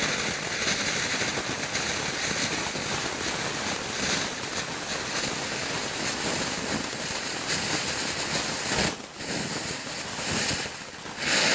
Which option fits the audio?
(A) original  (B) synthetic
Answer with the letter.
A